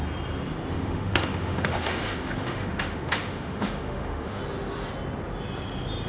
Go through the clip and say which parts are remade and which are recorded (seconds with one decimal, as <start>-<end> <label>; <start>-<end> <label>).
0.0-0.7 recorded; 0.7-4.4 remade; 4.4-6.1 recorded